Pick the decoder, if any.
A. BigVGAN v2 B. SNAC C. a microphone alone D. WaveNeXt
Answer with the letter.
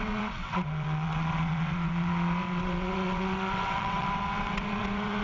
D